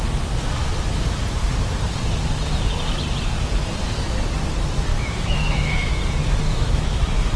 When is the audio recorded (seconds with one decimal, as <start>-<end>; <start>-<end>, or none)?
0.0-4.9; 6.0-6.4; 7.0-7.4